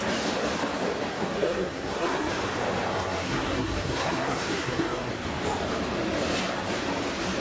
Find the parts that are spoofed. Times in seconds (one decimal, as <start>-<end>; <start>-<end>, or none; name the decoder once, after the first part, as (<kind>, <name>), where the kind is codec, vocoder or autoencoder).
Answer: 1.1-2.3 (codec, SNAC); 2.9-5.1